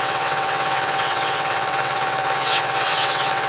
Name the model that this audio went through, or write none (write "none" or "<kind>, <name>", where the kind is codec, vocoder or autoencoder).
vocoder, WaveNeXt